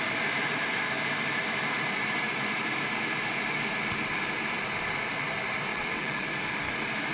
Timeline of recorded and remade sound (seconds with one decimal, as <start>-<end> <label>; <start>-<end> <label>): 0.0-5.7 recorded; 5.7-6.3 remade; 6.3-7.1 recorded